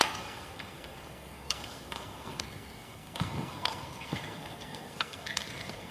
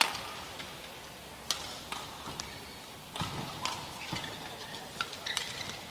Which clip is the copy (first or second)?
first